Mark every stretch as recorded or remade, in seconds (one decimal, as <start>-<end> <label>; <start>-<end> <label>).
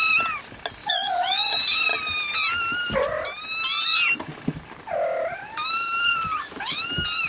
0.0-0.8 recorded; 0.8-1.5 remade; 1.5-7.3 recorded